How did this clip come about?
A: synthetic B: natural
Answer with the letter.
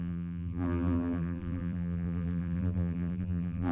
A